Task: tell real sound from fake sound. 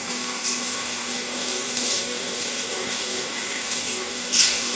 fake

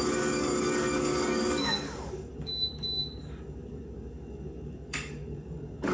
fake